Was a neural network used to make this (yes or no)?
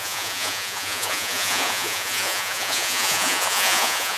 yes